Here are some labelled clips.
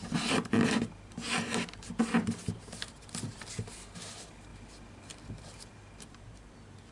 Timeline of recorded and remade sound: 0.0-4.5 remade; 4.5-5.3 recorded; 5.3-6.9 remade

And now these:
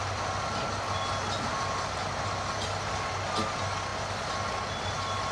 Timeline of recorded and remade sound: 0.0-5.3 recorded

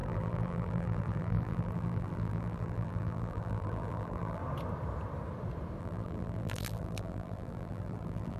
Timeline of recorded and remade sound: 0.0-4.4 remade; 4.4-5.8 recorded; 5.8-8.4 remade

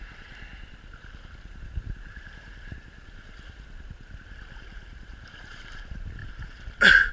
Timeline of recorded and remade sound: 0.0-7.1 remade

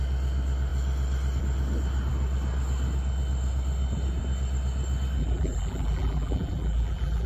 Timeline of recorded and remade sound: 0.0-5.2 recorded; 5.2-7.3 remade

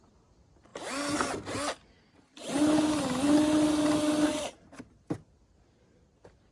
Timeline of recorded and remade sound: 0.0-4.3 recorded; 4.3-4.9 remade; 4.9-6.5 recorded

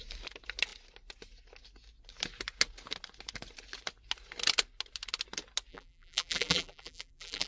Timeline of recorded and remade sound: 0.0-5.7 recorded; 5.7-7.5 remade